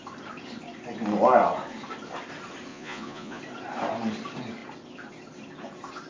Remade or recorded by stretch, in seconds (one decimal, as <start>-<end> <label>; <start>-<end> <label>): 0.0-2.7 recorded; 2.7-3.4 remade; 3.4-6.1 recorded